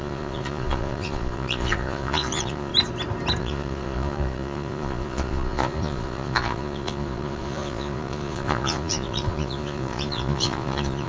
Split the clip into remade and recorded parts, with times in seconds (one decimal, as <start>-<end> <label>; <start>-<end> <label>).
0.0-2.7 remade; 2.7-3.4 recorded; 3.4-11.1 remade